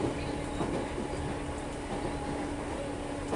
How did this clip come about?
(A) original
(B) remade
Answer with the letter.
A